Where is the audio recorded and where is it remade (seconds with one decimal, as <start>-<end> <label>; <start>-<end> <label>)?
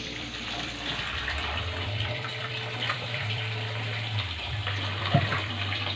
0.0-6.0 remade